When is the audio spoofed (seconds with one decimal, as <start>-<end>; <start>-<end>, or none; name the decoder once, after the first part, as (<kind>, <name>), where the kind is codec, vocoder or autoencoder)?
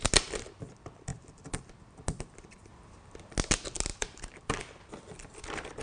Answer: 1.1-1.7 (vocoder, BigVGAN v2); 3.9-4.6